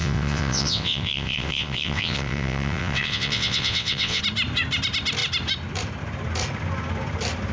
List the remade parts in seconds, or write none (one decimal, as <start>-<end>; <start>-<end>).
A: 0.0-4.2